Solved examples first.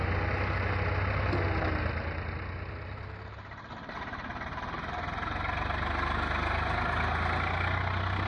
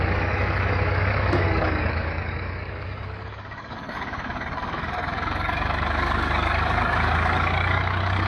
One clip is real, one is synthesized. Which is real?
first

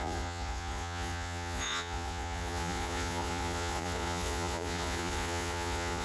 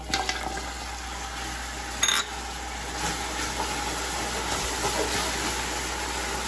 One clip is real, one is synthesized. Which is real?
second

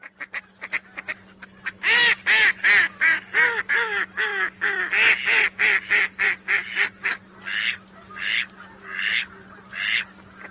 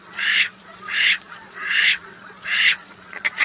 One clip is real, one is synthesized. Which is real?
first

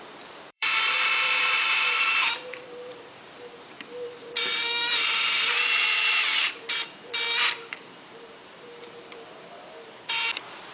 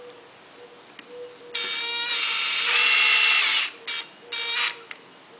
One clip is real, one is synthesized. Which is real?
second